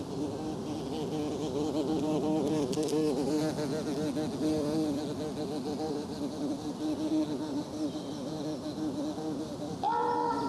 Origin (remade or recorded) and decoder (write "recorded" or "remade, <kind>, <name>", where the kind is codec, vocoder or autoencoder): recorded